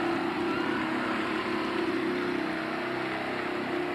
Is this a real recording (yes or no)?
yes